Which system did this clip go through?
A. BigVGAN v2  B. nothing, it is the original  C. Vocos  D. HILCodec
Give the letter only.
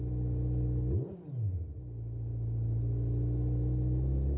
B